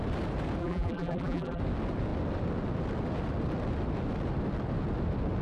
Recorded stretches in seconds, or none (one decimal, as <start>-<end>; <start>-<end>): 0.0-0.6; 1.6-5.4